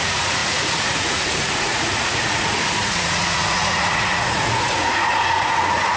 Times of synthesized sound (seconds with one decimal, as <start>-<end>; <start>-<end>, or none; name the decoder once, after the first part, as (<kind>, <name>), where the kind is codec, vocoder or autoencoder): 0.0-6.0 (vocoder, Vocos)